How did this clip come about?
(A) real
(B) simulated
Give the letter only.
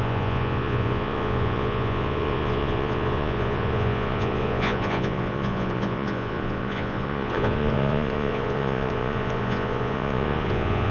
B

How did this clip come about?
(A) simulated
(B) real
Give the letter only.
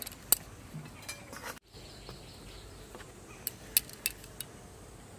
B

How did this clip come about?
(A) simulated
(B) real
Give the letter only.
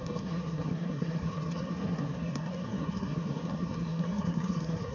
A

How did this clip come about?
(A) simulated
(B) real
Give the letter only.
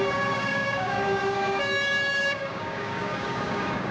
A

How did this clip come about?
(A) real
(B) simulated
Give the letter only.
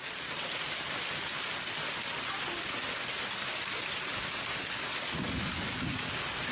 A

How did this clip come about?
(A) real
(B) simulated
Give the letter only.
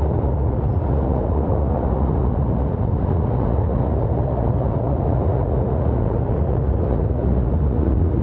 B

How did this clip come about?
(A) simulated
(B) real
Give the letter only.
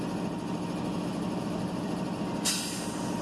B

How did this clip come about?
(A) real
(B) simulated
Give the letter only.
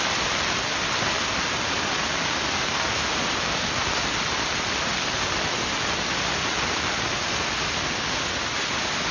A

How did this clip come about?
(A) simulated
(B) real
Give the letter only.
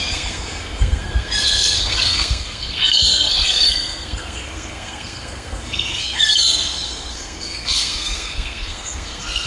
A